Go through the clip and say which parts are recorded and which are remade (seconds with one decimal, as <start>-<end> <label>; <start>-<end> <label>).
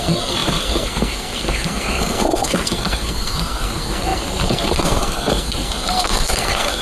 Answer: 0.0-6.8 remade